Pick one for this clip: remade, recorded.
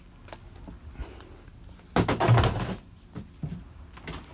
recorded